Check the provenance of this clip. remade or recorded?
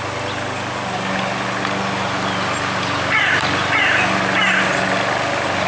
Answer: recorded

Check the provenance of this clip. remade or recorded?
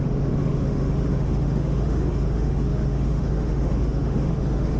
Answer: remade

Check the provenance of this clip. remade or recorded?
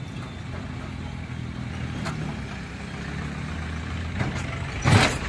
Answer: recorded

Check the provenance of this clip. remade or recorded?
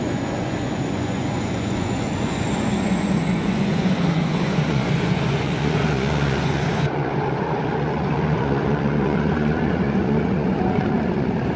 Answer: remade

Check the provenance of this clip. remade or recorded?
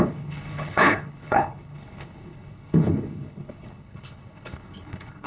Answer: remade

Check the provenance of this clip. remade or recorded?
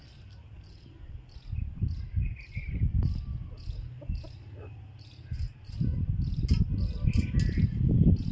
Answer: recorded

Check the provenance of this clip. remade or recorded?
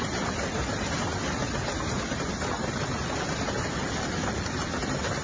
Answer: recorded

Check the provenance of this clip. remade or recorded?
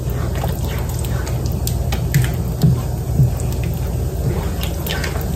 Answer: recorded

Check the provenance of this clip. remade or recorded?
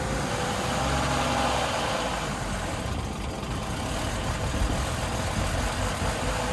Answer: recorded